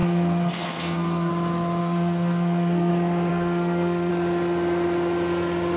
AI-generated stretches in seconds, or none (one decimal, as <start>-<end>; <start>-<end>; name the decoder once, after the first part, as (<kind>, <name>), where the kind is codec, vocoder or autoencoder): 0.0-1.3 (codec, SNAC); 1.8-2.9; 3.3-4.1